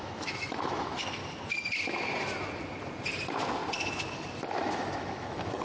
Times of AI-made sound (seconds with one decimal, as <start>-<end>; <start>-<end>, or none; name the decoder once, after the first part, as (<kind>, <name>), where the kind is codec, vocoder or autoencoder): 0.0-1.2 (autoencoder, DAC-VAE); 4.6-5.6

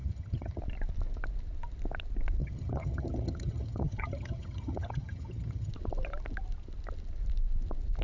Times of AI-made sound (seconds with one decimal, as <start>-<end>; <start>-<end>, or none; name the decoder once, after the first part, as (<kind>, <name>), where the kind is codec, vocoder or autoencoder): 0.0-0.6 (vocoder, HiFi-GAN); 2.4-5.7

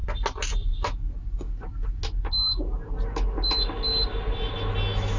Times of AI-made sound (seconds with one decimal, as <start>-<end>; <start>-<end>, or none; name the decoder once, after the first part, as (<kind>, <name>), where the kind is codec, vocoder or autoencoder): none

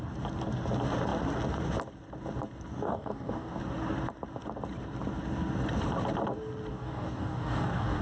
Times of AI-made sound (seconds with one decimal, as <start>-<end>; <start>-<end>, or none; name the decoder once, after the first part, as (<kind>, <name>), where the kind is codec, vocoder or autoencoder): 2.7-3.6 (codec, DAC); 6.7-8.0

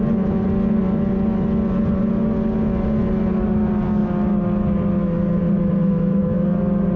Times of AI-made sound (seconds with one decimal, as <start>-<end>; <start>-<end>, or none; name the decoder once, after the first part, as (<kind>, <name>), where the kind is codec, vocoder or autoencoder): none

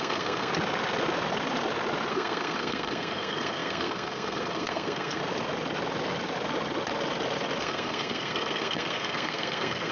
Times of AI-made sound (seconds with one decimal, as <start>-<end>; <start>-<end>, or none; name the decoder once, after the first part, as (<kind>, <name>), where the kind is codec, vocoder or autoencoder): 0.0-0.5 (codec, SNAC); 2.1-5.2; 7.6-9.9

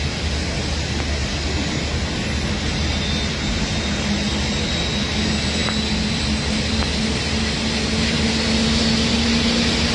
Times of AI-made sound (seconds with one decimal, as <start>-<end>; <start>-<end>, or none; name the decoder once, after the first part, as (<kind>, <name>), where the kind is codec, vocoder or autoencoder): none

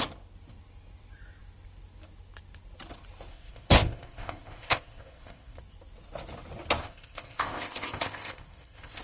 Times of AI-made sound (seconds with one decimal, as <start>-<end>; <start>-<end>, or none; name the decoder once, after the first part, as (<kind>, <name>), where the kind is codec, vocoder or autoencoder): 3.3-5.6 (codec, ZipCodec); 6.8-9.0